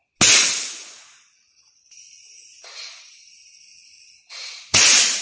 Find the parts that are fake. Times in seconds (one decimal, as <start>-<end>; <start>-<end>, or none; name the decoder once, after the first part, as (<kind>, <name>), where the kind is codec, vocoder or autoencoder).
0.5-1.5 (vocoder, Vocos); 3.7-5.2